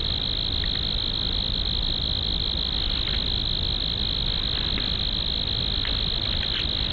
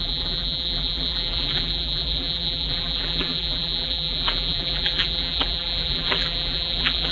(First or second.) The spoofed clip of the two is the second